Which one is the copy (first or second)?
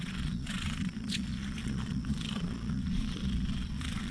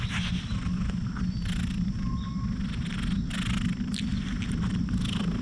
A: first